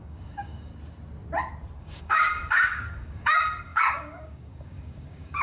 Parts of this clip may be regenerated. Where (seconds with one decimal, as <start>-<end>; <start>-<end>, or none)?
0.0-0.7; 1.8-5.4